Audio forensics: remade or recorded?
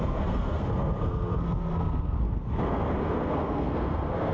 remade